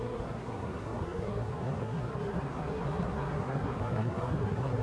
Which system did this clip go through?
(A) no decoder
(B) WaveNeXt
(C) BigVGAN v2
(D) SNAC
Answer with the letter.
D